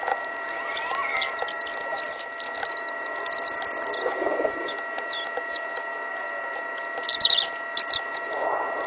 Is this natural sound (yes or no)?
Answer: yes